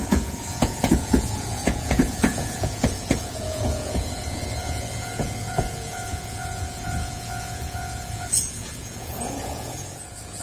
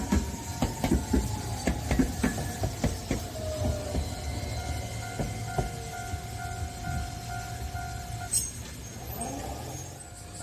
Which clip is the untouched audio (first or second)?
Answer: second